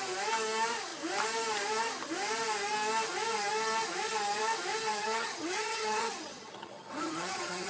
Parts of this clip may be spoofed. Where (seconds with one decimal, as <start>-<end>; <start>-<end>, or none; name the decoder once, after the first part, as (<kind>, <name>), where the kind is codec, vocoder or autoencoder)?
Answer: 4.9-7.7 (vocoder, HiFi-GAN)